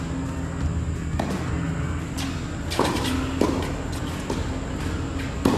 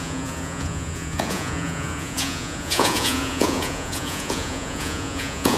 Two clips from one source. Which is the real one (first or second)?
first